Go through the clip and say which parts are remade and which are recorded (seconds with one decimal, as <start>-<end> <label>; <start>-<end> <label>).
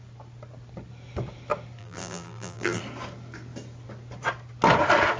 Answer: 0.0-1.8 recorded; 1.8-2.8 remade; 2.8-5.2 recorded